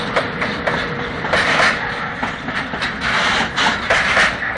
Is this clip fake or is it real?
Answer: real